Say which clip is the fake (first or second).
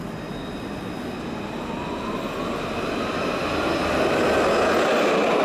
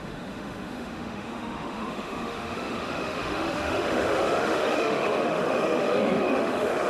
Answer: second